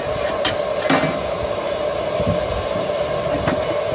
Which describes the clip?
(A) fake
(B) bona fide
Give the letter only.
B